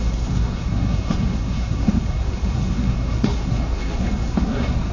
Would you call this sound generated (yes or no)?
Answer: yes